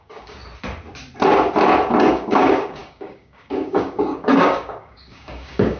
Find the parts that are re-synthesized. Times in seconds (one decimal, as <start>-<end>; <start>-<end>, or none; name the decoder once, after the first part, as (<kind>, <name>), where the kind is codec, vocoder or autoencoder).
0.0-0.4 (codec, DAC); 2.1-5.8